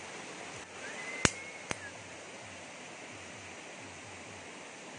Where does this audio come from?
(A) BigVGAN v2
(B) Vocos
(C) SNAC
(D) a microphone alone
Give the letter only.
D